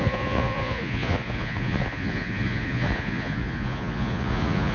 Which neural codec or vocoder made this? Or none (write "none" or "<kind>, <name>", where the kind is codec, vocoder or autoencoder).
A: vocoder, Vocos